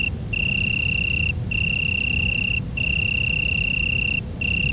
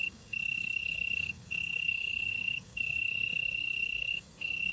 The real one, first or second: first